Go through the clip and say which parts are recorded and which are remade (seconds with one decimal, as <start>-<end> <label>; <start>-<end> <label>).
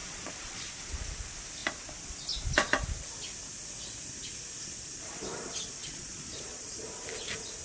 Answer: 0.0-0.7 remade; 0.7-5.8 recorded; 5.8-6.9 remade; 6.9-7.6 recorded